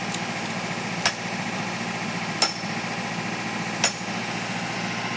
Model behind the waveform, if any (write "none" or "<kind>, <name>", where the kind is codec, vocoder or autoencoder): none